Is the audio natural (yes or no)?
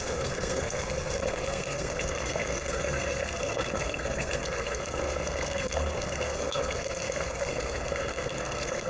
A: no